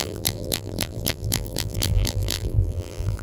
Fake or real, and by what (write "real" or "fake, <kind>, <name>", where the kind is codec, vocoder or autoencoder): fake, vocoder, BigVGAN v2